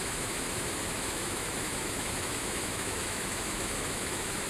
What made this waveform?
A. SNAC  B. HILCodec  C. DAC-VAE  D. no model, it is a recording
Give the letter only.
C